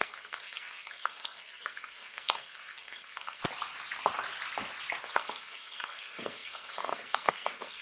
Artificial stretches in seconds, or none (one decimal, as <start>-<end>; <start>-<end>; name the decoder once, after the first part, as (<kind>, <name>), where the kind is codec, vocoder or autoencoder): 0.0-3.4 (codec, SNAC); 5.0-7.8